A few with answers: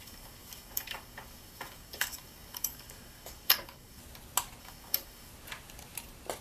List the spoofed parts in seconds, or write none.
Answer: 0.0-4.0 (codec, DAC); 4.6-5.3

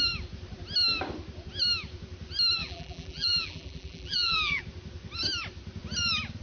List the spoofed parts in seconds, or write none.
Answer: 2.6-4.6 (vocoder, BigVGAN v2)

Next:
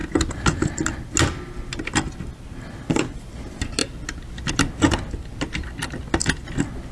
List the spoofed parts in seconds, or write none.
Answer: none

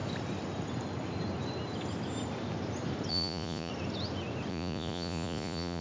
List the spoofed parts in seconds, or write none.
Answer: 3.1-3.7 (vocoder, Vocos); 4.5-5.8